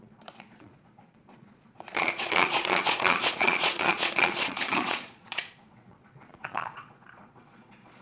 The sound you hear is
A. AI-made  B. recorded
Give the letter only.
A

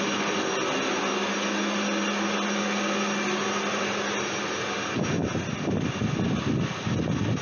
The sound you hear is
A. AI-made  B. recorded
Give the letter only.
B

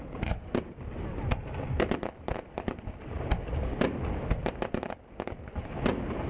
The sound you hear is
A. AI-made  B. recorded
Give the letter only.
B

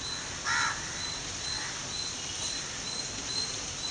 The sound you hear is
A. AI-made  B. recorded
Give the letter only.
B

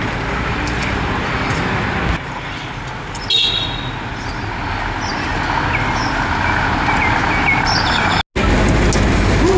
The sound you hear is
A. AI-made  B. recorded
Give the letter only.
B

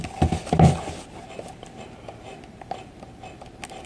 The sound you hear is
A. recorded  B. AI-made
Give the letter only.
A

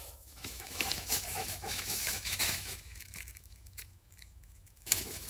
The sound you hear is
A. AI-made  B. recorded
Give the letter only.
A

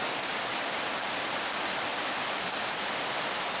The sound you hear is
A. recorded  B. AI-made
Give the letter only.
A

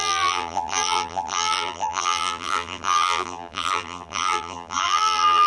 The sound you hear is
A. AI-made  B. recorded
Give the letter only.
A